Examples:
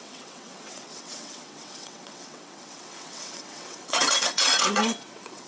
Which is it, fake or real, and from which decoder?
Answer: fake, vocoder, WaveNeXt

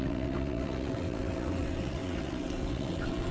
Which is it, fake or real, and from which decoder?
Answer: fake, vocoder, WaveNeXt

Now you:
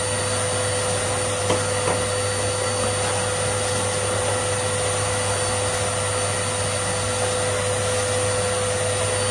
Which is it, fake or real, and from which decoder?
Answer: real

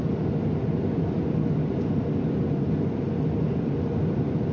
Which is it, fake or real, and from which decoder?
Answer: real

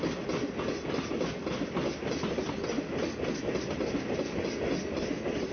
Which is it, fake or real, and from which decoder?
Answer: real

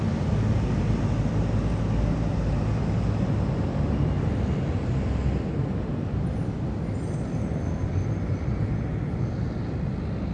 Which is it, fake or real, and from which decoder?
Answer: real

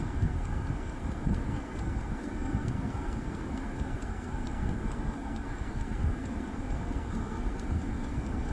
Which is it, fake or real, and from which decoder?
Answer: fake, codec, SNAC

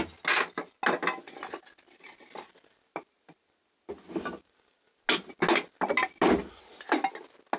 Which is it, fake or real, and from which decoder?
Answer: real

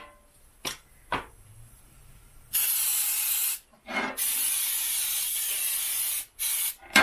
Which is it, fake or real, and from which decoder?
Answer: real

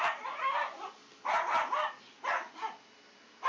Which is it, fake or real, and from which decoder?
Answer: real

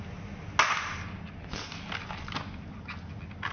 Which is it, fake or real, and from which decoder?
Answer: real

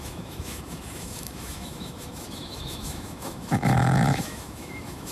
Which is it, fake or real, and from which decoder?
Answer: fake, autoencoder, DAC-VAE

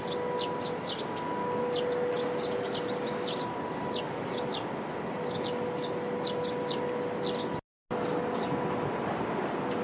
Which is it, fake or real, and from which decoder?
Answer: real